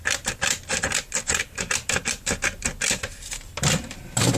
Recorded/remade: recorded